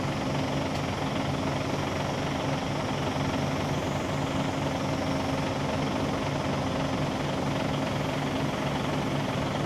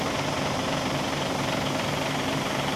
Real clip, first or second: first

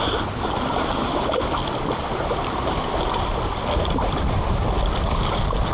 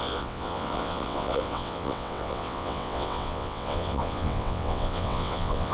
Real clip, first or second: first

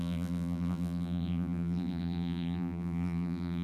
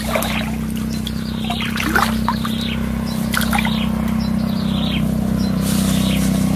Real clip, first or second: second